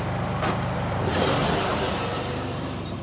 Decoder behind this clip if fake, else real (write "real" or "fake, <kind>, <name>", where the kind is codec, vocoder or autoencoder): fake, vocoder, BigVGAN v2